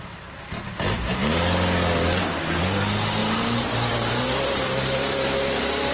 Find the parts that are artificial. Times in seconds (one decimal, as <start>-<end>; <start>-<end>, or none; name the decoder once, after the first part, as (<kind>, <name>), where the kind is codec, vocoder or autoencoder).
0.0-1.2 (vocoder, BigVGAN v2); 2.6-5.9